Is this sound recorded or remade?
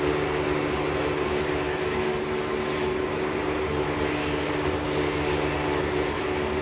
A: recorded